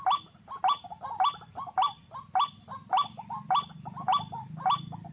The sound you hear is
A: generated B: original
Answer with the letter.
B